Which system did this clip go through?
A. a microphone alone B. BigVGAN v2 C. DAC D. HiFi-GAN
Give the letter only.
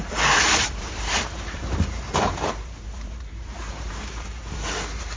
B